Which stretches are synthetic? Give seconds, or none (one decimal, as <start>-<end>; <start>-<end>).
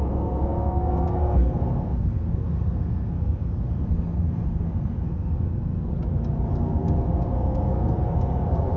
0.0-5.9; 6.5-8.8